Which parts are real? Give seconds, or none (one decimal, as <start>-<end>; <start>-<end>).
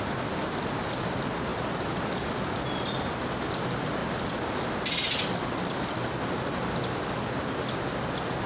0.0-8.5